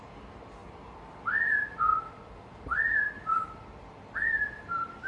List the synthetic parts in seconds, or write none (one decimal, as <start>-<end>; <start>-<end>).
0.6-1.1; 1.9-5.1